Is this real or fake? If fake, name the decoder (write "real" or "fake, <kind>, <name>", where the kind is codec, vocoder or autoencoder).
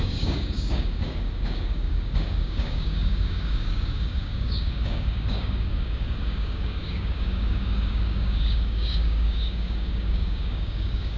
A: fake, codec, DAC